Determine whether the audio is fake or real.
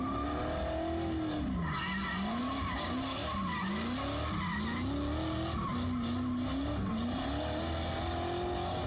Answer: real